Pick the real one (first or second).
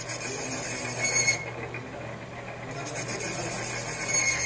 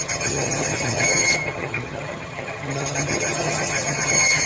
first